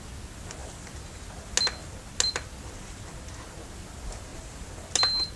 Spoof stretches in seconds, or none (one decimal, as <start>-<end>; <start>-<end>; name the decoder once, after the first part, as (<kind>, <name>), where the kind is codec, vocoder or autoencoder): none